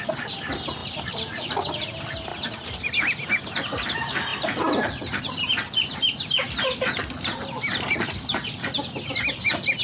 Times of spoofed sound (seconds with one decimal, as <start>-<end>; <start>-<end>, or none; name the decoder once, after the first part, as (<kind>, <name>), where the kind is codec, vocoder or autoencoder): 4.3-5.2 (vocoder, BigVGAN v2)